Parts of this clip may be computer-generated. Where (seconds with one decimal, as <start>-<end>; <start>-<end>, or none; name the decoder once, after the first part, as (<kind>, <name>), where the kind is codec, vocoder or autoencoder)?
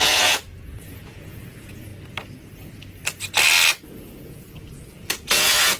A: 0.0-1.9 (vocoder, Vocos); 4.2-5.8